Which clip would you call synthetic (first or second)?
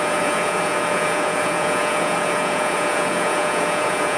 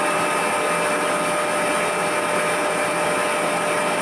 first